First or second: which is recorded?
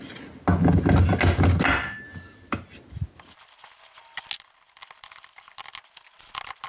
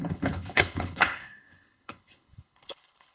first